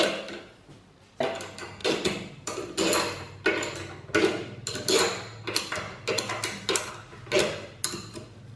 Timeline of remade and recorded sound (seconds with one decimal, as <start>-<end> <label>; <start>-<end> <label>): 0.0-8.6 recorded